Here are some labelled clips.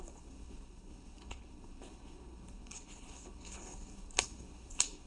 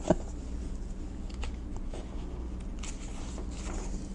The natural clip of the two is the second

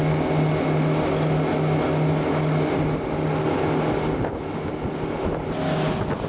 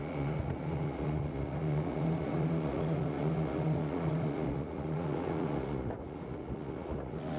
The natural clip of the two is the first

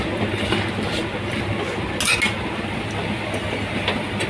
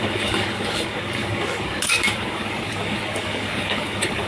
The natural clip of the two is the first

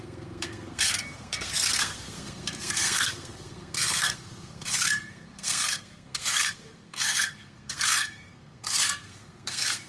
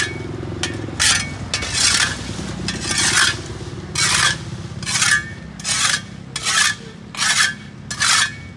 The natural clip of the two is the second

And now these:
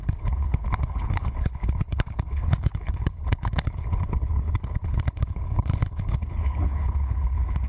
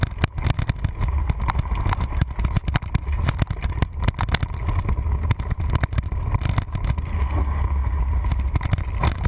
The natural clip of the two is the second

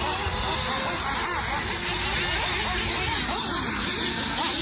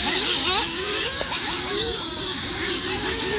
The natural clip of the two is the first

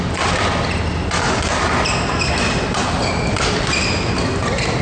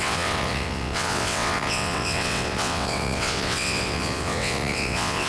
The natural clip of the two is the first